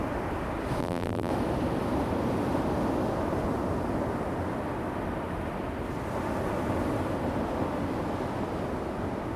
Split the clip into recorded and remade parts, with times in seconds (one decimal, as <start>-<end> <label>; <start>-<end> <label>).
0.0-0.8 recorded; 0.8-1.3 remade; 1.3-9.4 recorded